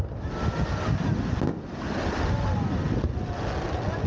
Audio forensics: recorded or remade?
recorded